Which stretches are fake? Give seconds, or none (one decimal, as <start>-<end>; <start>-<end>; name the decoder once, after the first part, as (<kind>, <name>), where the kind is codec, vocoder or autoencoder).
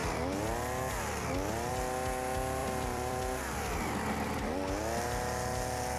2.6-3.2 (vocoder, BigVGAN v2)